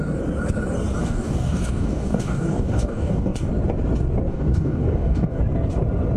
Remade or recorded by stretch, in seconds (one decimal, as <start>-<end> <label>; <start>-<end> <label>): 0.0-1.0 recorded; 1.0-3.5 remade; 3.5-4.3 recorded; 4.3-5.4 remade; 5.4-6.2 recorded